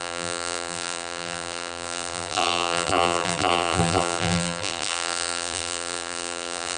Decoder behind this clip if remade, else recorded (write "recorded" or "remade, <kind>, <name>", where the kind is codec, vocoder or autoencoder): remade, vocoder, BigVGAN v2